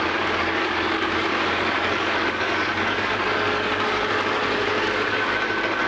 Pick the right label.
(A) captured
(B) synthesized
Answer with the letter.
B